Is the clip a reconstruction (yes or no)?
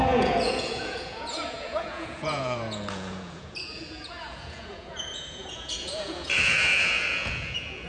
yes